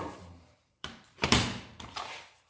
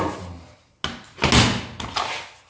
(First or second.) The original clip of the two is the second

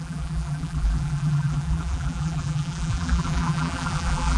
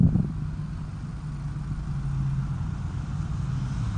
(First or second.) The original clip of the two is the second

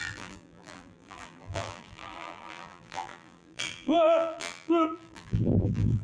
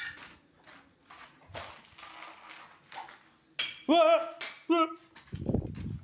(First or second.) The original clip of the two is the second